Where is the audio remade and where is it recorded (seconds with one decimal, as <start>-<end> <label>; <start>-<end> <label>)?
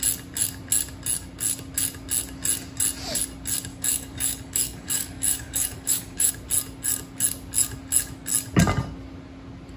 0.0-3.7 recorded; 3.7-6.3 remade; 6.3-9.8 recorded